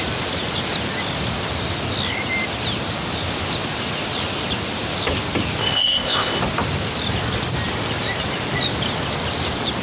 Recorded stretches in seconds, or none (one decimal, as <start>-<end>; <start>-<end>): 0.0-5.6; 6.4-9.8